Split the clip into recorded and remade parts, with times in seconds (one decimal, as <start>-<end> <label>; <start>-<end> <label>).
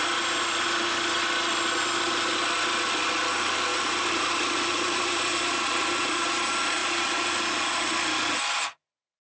0.0-3.7 recorded; 3.7-6.3 remade; 6.3-6.8 recorded; 6.8-7.4 remade; 7.4-9.2 recorded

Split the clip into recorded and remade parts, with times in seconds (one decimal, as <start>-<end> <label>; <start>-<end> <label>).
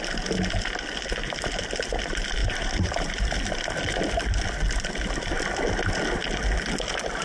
0.0-2.4 recorded; 2.4-3.4 remade; 3.4-7.2 recorded